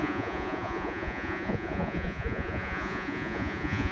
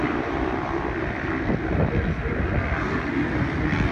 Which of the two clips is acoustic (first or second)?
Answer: second